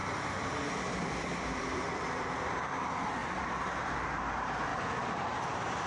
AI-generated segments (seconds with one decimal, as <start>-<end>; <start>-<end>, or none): 0.0-2.6; 3.2-3.9; 4.7-5.9